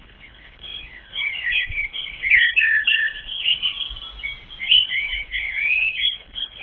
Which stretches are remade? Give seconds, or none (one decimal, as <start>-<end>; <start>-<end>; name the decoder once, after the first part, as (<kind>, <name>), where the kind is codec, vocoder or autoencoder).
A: 0.0-3.7 (codec, HILCodec); 4.6-6.6